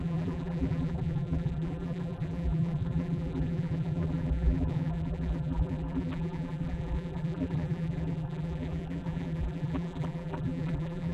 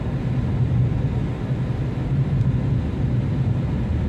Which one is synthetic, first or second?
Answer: first